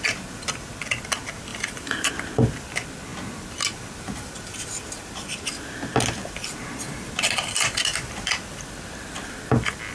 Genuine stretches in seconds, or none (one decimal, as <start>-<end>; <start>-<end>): 0.0-1.5; 2.1-9.9